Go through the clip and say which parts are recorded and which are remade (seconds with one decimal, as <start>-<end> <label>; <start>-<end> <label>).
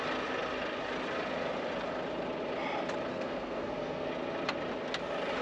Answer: 0.0-3.1 recorded; 3.1-4.1 remade; 4.1-5.4 recorded